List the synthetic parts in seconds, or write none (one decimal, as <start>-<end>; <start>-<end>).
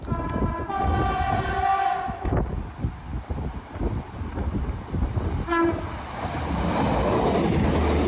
none